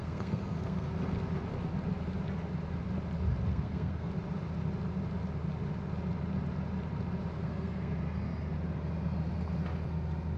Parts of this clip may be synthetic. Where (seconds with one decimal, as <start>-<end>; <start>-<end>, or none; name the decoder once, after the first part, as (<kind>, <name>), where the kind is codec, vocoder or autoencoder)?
0.0-0.9 (codec, SNAC); 3.5-4.1; 7.4-8.0